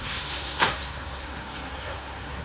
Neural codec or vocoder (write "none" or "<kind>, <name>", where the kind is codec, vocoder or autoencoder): codec, SNAC